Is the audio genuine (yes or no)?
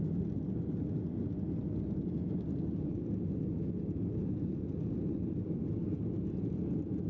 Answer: yes